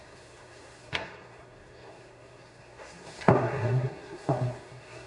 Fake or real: fake